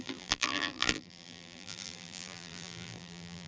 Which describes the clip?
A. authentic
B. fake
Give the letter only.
B